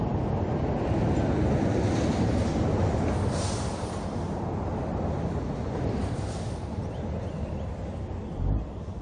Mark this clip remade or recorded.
recorded